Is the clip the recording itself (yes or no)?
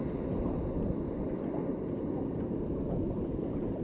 yes